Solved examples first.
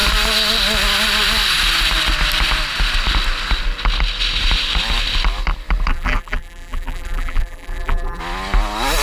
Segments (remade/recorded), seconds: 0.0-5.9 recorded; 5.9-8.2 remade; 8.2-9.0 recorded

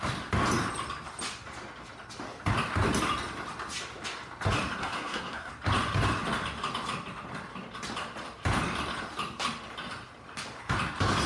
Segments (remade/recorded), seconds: 0.0-4.8 recorded; 4.8-5.5 remade; 5.5-11.3 recorded

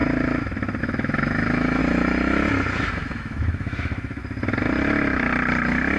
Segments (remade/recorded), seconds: 0.0-0.8 recorded; 0.8-1.8 remade; 1.8-2.9 recorded; 2.9-4.2 remade; 4.2-6.0 recorded

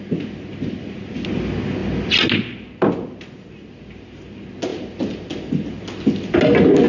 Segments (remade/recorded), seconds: 0.0-6.9 recorded

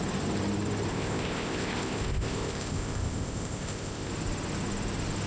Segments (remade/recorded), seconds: 0.0-0.9 recorded; 0.9-4.1 remade; 4.1-5.3 recorded

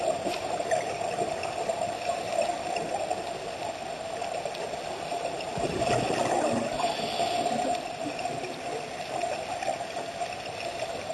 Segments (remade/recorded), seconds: 0.0-5.1 recorded; 5.1-5.7 remade; 5.7-11.1 recorded